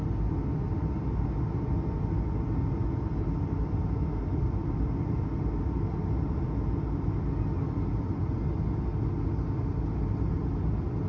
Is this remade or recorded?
recorded